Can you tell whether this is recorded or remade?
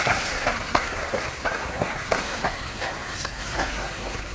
remade